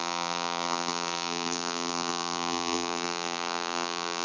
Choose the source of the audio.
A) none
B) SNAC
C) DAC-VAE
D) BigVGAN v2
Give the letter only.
D